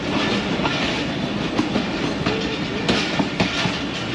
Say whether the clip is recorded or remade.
recorded